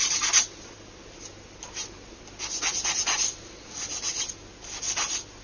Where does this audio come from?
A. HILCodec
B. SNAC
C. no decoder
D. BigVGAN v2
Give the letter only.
C